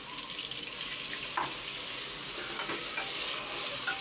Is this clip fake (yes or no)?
no